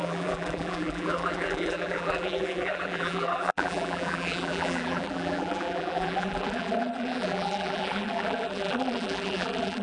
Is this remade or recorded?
remade